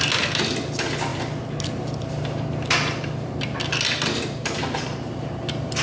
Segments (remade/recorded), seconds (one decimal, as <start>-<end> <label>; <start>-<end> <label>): 0.0-5.8 recorded